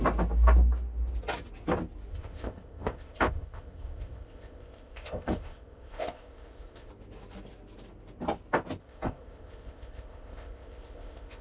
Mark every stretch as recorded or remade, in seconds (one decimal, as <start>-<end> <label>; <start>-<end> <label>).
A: 0.0-2.1 recorded; 2.1-6.9 remade; 6.9-8.8 recorded; 8.8-11.4 remade